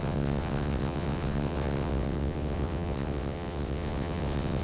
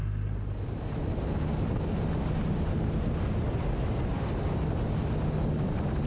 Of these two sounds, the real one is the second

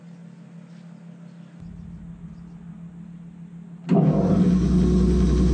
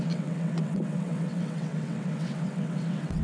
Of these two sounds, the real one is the first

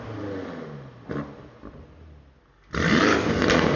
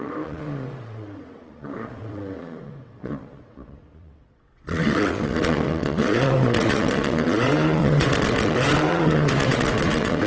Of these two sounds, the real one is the first